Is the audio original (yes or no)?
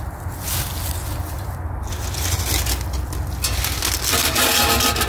yes